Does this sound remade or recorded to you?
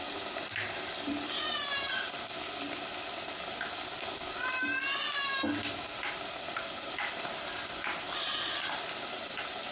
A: recorded